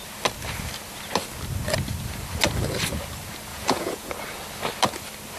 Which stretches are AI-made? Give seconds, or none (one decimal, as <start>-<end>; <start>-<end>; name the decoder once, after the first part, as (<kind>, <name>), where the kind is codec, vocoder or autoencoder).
3.5-4.1 (vocoder, Vocos)